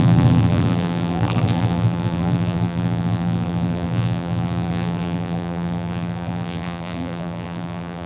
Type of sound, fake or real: fake